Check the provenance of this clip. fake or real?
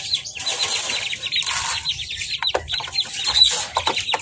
real